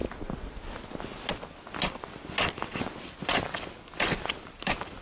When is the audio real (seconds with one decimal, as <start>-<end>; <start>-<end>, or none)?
0.0-3.0; 3.5-4.3